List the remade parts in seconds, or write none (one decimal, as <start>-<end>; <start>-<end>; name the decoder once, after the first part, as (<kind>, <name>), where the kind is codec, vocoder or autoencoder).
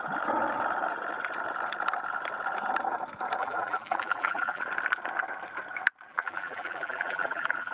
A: 3.4-4.6 (vocoder, BigVGAN v2); 6.1-7.7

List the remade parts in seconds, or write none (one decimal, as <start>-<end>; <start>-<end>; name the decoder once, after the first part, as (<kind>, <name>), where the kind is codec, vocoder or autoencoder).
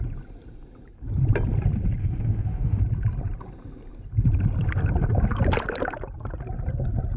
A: 2.0-2.8 (autoencoder, DAC-VAE)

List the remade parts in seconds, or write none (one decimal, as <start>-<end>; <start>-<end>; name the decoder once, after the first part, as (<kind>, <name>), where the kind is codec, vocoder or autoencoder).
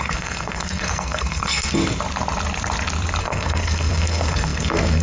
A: 0.0-1.8 (codec, SNAC); 3.2-5.0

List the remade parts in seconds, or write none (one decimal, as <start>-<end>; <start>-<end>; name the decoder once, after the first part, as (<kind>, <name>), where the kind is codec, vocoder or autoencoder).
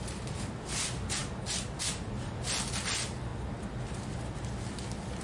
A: 0.0-1.2 (vocoder, BigVGAN v2); 2.2-3.3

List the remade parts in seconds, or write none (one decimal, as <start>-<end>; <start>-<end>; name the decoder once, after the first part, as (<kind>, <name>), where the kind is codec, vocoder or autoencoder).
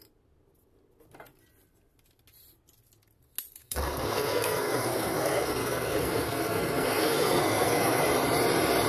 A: 3.6-8.0 (codec, SNAC)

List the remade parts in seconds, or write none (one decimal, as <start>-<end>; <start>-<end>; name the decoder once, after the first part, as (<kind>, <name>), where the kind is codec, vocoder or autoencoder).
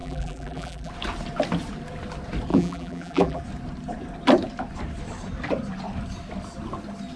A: 0.0-0.9 (vocoder, BigVGAN v2); 2.5-3.4